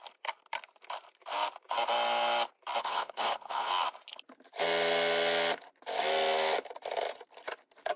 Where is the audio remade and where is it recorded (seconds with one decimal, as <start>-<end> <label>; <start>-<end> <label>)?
0.0-2.8 recorded; 2.8-3.7 remade; 3.7-8.0 recorded

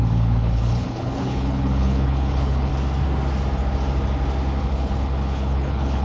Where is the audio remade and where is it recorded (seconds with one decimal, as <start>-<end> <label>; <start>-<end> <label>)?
0.0-2.7 remade; 2.7-4.6 recorded; 4.6-6.0 remade

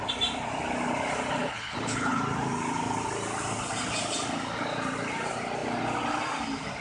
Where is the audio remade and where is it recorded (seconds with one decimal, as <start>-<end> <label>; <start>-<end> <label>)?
0.0-1.4 recorded; 1.4-2.2 remade; 2.2-6.8 recorded